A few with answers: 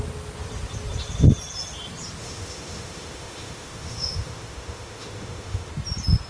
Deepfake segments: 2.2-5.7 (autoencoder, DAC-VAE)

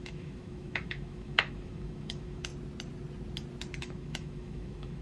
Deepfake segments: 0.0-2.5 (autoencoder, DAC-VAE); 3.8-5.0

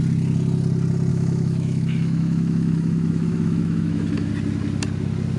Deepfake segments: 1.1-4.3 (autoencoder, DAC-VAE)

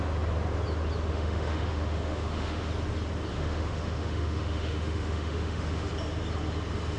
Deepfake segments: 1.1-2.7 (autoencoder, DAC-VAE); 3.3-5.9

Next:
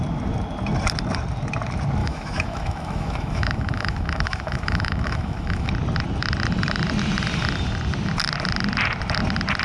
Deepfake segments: 2.0-5.7 (autoencoder, DAC-VAE)